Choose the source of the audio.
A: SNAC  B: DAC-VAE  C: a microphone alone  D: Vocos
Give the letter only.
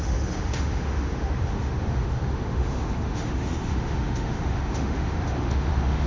B